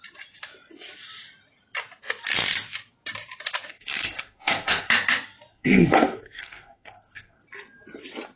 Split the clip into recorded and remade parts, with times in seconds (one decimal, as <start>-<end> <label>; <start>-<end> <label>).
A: 0.0-3.7 recorded; 3.7-4.9 remade; 4.9-5.5 recorded; 5.5-7.4 remade; 7.4-8.4 recorded